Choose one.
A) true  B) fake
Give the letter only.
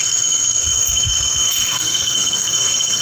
B